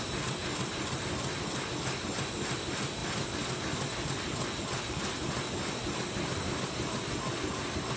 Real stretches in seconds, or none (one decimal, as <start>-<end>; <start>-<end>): 0.0-0.4; 1.6-8.0